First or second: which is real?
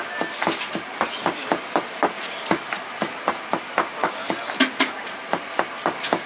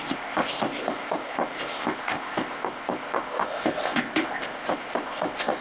first